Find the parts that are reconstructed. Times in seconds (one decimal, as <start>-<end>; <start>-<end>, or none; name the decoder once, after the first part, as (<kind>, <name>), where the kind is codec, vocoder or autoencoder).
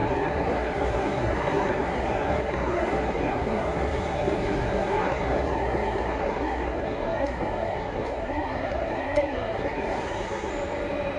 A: 0.0-10.5 (codec, SNAC)